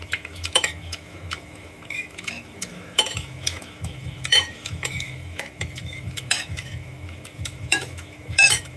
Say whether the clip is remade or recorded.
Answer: remade